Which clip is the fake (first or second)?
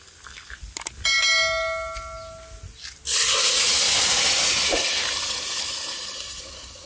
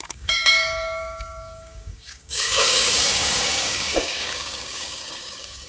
second